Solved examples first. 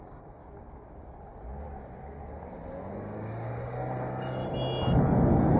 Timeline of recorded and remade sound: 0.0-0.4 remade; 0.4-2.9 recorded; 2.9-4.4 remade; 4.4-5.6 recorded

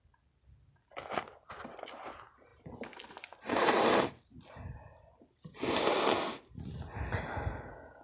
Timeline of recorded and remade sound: 0.0-8.0 recorded

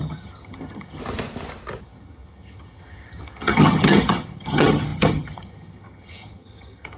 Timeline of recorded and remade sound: 0.0-1.0 remade; 1.0-1.8 recorded; 1.8-7.0 remade

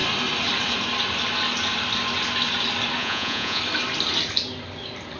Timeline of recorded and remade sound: 0.0-3.0 recorded; 3.0-3.6 remade; 3.6-5.2 recorded

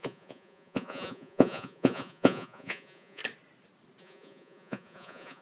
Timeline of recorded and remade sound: 0.0-3.2 remade; 3.2-4.0 recorded; 4.0-5.4 remade